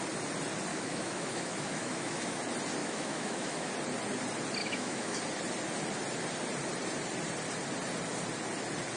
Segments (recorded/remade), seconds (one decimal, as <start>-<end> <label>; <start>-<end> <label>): 0.0-0.7 recorded; 0.7-2.4 remade; 2.4-2.8 recorded; 2.8-3.7 remade; 3.7-4.6 recorded; 4.6-5.2 remade; 5.2-9.0 recorded